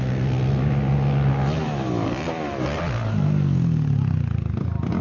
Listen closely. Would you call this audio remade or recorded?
recorded